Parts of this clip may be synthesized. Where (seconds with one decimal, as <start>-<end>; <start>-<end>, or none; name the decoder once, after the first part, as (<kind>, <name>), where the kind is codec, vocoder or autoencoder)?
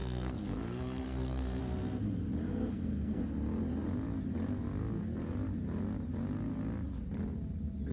0.0-1.6 (codec, SNAC); 2.5-3.2